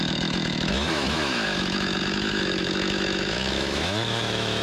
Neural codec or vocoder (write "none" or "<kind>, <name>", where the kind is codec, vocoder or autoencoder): autoencoder, DAC-VAE